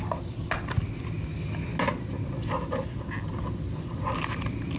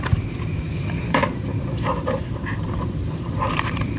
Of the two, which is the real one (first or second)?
first